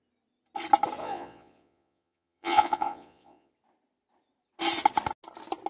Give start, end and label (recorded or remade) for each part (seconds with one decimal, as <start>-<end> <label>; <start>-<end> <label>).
0.0-1.0 recorded; 1.0-3.5 remade; 3.5-5.7 recorded